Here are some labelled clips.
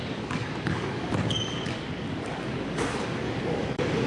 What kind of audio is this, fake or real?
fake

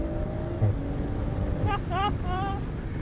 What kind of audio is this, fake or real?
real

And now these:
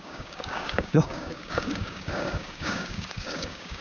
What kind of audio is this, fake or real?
fake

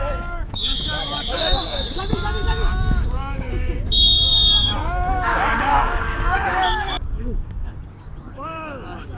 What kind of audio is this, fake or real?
fake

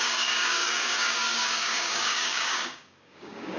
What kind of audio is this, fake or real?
fake